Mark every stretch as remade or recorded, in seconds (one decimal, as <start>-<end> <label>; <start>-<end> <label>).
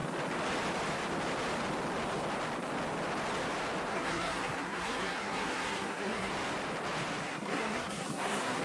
0.0-3.9 recorded; 3.9-6.3 remade; 6.3-7.2 recorded; 7.2-8.6 remade